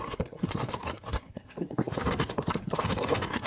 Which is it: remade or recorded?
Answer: remade